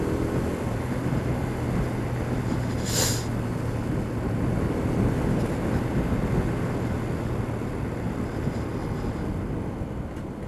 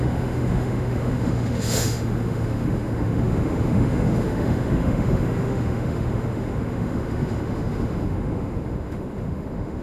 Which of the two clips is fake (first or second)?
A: second